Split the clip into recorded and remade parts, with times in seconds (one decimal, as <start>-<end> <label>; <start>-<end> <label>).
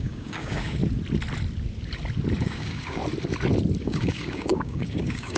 0.0-0.8 remade; 0.8-2.4 recorded; 2.4-3.0 remade; 3.0-3.8 recorded; 3.8-5.4 remade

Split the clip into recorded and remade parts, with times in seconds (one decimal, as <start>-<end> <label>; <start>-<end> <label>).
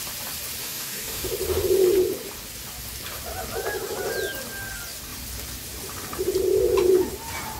0.0-0.6 recorded; 0.6-1.3 remade; 1.3-7.6 recorded